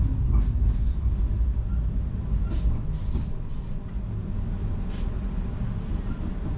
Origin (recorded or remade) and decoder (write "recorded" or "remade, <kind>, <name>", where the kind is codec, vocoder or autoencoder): recorded